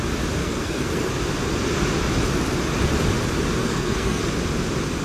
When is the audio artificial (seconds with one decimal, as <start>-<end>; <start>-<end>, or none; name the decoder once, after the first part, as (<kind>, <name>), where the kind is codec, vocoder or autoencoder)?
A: 0.4-1.1 (codec, SNAC); 3.6-4.2